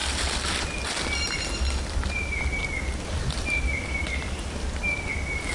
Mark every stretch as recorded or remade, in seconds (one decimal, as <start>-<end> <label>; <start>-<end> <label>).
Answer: 0.0-5.5 recorded